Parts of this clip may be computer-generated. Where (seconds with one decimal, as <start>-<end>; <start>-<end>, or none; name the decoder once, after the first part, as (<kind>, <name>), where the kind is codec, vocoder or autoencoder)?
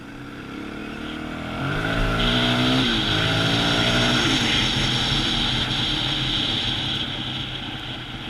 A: none